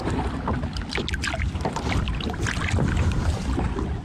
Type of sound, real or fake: real